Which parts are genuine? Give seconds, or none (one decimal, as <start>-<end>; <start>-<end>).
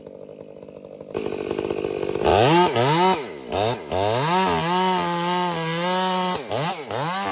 0.0-7.3